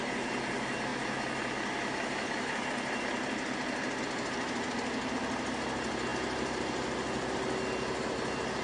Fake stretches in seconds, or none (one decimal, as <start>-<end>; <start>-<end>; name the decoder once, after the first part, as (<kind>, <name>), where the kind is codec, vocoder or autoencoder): none